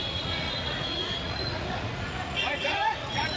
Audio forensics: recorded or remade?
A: remade